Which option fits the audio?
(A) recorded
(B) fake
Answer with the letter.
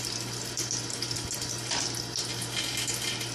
A